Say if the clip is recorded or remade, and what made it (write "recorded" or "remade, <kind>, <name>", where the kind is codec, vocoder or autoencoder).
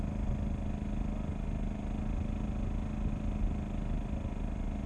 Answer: recorded